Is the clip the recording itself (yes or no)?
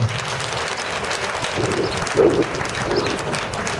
yes